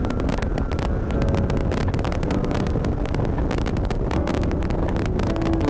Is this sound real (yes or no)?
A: yes